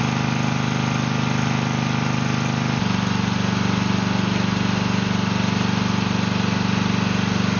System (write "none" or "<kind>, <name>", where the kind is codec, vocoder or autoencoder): none